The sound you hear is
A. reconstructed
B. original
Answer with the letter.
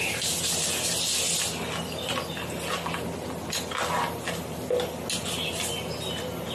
B